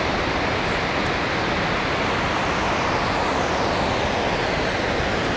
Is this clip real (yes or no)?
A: yes